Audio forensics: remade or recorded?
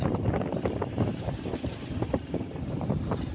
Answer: remade